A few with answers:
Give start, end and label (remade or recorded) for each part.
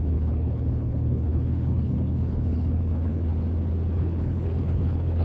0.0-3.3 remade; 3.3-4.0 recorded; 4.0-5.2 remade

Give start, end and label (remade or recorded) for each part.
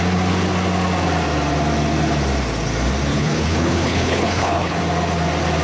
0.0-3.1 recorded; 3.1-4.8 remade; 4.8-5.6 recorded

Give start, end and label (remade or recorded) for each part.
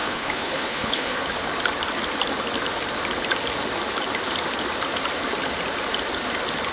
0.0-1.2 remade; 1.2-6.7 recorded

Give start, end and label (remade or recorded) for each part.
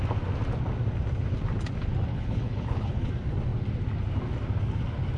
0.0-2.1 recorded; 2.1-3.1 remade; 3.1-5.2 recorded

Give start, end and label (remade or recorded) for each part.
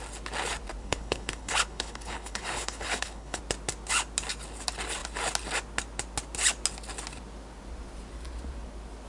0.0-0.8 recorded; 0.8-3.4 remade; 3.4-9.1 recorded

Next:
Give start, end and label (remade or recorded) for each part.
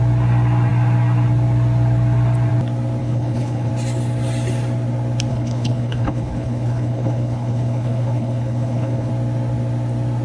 0.0-3.0 recorded; 3.0-3.7 remade; 3.7-5.3 recorded; 5.3-9.1 remade; 9.1-10.2 recorded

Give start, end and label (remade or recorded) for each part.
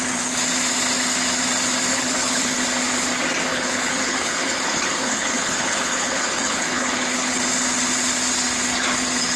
0.0-1.9 recorded; 1.9-2.6 remade; 2.6-3.5 recorded; 3.5-7.4 remade; 7.4-9.4 recorded